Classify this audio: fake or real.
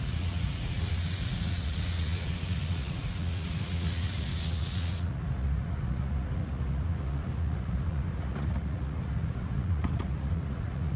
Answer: fake